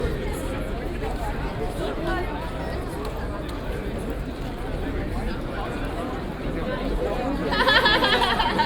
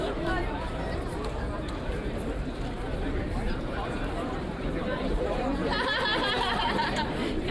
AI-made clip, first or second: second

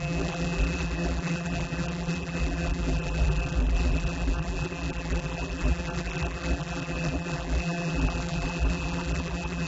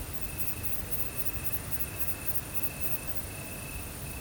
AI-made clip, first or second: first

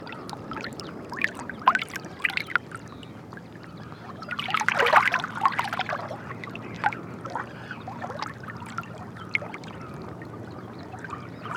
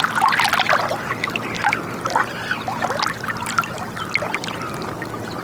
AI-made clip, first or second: first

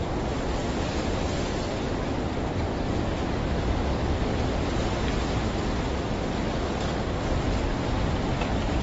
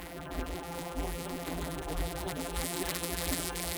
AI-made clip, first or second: second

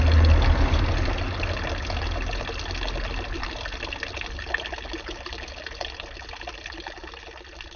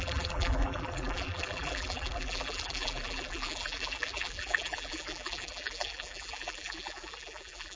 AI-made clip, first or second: second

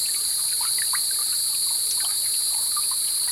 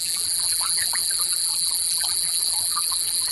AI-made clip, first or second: second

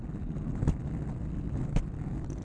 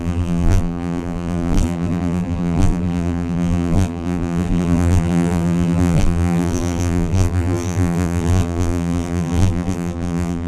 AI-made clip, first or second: second